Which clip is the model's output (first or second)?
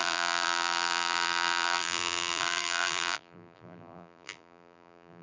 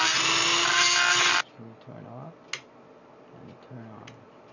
first